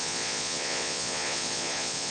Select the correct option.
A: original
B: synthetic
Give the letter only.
B